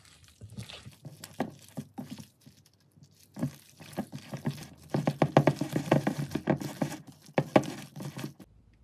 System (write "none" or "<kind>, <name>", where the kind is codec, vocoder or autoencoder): none